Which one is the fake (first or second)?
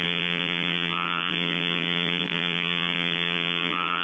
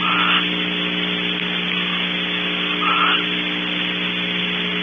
first